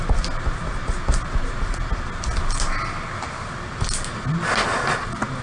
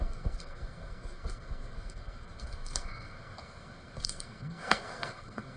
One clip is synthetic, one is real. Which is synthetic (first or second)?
second